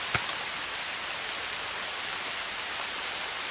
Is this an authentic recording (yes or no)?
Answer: yes